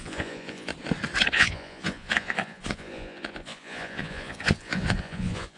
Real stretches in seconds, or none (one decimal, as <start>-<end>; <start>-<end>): 0.7-1.3